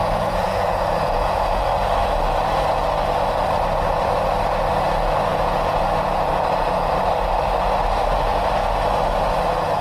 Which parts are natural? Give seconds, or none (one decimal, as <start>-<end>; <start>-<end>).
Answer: 1.6-5.3; 5.8-9.8